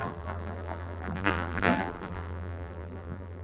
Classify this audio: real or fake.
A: fake